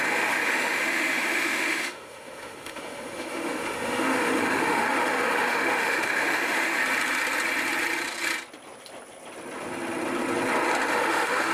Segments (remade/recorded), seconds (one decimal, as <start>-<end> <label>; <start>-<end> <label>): 0.0-6.8 remade; 6.8-10.9 recorded; 10.9-11.5 remade